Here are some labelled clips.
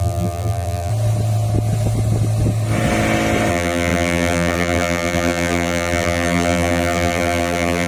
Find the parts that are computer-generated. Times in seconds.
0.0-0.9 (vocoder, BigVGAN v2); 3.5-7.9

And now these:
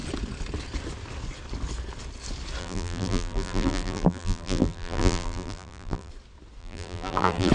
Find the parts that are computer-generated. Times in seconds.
2.6-6.1 (vocoder, BigVGAN v2); 6.6-7.5

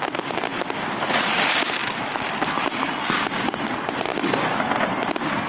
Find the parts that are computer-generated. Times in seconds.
none

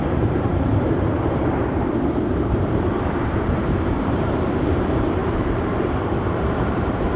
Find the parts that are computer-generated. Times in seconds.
0.0-7.2 (vocoder, BigVGAN v2)

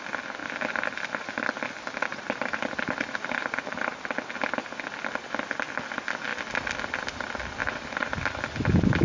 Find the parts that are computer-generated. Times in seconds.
0.4-1.4 (vocoder, BigVGAN v2); 2.1-4.1; 7.6-8.2